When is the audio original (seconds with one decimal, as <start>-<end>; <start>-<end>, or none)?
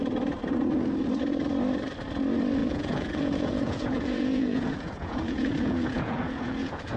0.0-2.6